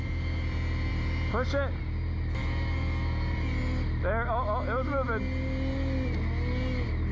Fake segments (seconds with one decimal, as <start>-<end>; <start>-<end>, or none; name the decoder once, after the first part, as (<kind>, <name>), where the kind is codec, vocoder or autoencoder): none